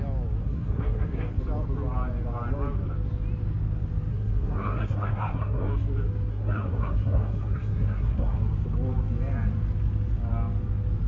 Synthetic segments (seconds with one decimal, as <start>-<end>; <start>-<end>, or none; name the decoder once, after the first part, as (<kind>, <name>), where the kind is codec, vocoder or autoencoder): 0.4-1.4 (codec, SNAC); 4.1-5.7; 6.3-8.4